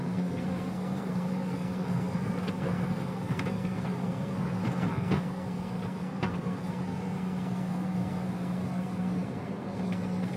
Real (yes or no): no